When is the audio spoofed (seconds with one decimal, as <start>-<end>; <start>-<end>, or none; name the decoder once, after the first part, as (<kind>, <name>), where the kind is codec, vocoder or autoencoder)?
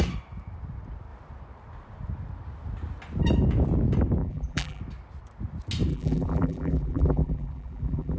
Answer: 4.2-4.8 (vocoder, BigVGAN v2); 5.9-8.2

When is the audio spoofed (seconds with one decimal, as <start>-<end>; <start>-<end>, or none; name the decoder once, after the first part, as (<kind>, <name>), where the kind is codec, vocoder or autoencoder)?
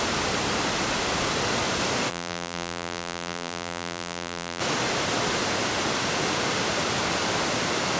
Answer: 2.1-4.6 (vocoder, BigVGAN v2)